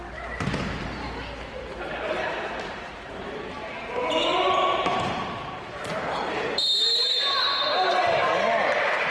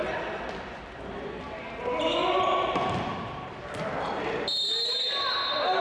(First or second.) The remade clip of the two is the first